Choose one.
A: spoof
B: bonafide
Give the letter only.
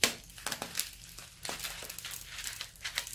B